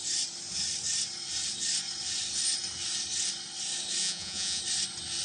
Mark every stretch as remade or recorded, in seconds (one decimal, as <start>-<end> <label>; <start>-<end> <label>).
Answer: 0.0-4.0 recorded; 4.0-4.6 remade; 4.6-5.2 recorded